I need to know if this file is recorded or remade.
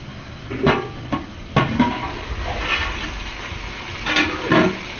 recorded